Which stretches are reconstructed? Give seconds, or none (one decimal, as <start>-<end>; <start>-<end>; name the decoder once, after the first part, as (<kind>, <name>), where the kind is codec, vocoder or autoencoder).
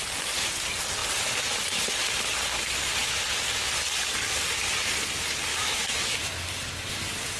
5.5-6.2 (autoencoder, DAC-VAE)